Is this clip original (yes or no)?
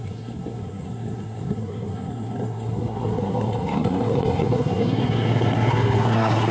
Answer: no